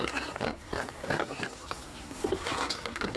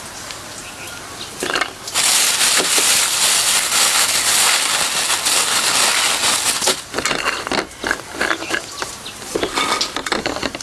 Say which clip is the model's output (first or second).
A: first